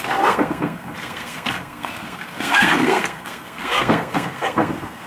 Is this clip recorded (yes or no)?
no